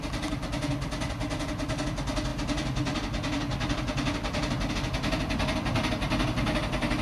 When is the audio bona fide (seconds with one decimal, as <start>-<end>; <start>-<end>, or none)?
0.0-7.0